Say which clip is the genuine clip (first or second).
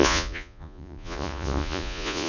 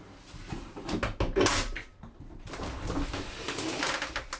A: second